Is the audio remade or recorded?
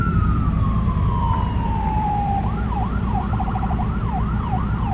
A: remade